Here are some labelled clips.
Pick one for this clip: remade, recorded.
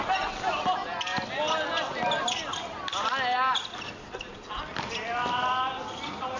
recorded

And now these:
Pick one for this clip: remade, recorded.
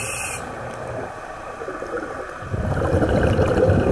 recorded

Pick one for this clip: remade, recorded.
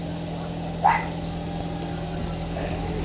recorded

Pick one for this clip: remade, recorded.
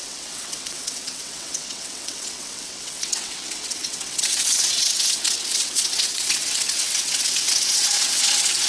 remade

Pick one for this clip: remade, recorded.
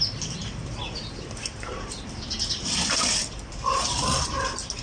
recorded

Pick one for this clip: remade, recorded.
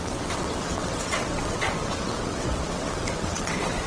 remade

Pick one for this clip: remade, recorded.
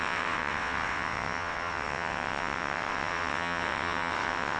remade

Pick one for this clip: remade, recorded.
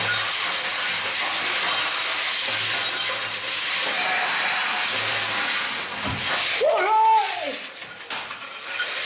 recorded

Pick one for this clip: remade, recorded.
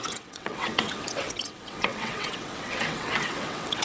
remade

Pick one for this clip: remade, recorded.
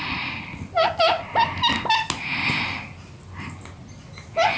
recorded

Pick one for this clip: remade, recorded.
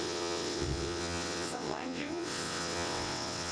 remade